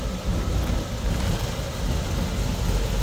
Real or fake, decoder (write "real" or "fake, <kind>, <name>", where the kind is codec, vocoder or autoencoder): real